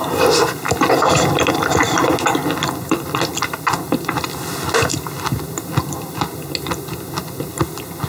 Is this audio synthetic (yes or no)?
no